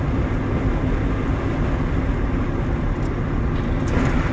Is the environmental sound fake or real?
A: real